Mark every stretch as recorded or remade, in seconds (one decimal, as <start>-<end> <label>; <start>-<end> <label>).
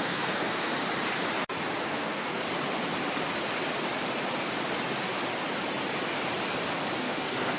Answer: 0.0-0.7 remade; 0.7-1.9 recorded; 1.9-2.4 remade; 2.4-7.0 recorded; 7.0-7.6 remade